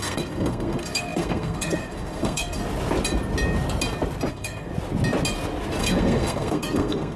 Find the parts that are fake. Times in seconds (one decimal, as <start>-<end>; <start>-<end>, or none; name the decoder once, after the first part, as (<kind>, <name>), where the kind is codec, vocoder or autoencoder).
0.0-2.6 (codec, SNAC); 4.3-4.7; 5.8-7.2